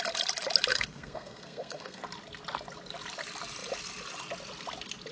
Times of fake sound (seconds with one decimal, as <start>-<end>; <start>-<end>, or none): 0.7-2.0